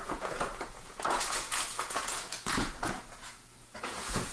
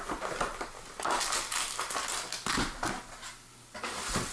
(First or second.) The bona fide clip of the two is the second